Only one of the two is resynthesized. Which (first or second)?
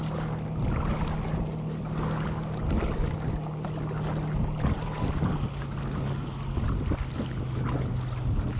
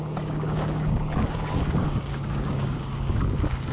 second